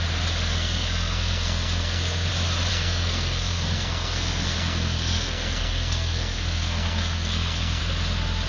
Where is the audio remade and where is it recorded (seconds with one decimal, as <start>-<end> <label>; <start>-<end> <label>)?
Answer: 0.0-0.5 recorded; 0.5-2.3 remade; 2.3-2.7 recorded; 2.7-7.8 remade; 7.8-8.5 recorded